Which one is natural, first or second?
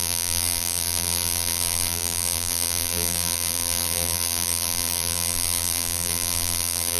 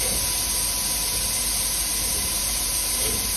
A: second